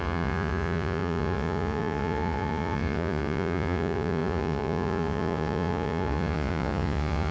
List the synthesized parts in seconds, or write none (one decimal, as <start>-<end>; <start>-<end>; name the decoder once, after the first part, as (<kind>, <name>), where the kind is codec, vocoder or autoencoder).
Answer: 0.0-7.3 (vocoder, Vocos)